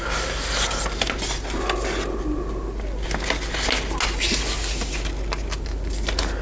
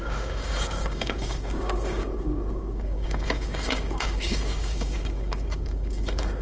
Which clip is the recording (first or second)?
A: first